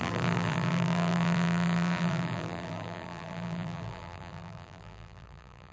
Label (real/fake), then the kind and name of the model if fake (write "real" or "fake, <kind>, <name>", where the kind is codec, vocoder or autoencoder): fake, vocoder, BigVGAN v2